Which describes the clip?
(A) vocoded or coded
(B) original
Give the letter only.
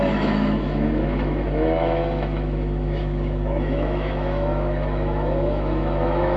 A